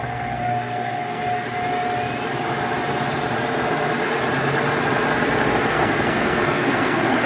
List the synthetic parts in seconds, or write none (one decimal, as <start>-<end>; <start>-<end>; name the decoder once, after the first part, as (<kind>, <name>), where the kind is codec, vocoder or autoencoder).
0.0-1.2 (codec, SNAC); 5.6-7.3